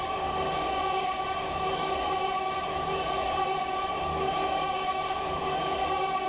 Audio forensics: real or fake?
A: fake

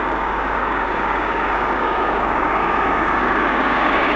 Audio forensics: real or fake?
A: fake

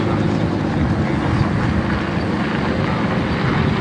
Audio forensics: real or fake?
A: real